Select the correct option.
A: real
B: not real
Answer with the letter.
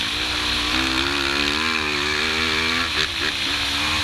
A